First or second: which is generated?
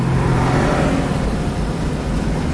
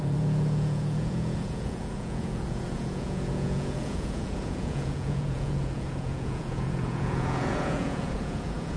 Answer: second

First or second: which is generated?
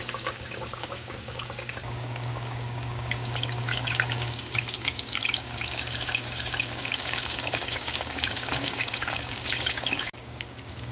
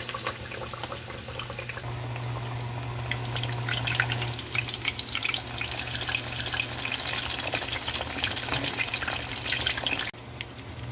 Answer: first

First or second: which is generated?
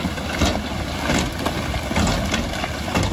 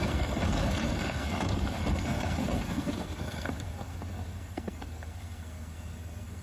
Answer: second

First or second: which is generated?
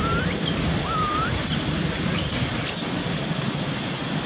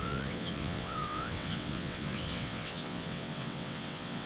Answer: second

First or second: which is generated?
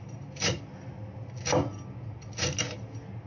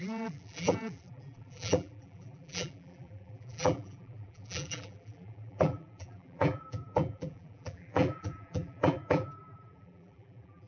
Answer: second